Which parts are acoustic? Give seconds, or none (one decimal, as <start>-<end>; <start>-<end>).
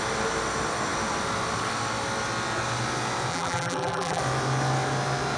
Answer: 0.0-3.3; 4.2-5.4